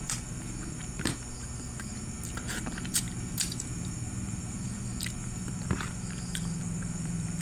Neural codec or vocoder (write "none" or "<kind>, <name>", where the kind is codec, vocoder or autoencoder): vocoder, BigVGAN v2